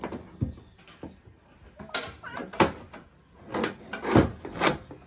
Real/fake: real